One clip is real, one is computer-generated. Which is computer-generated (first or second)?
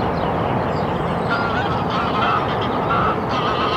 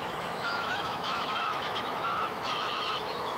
second